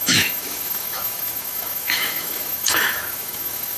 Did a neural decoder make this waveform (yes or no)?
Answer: yes